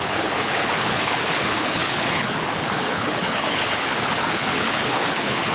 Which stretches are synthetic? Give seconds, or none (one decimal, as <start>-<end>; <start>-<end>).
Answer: 0.0-5.5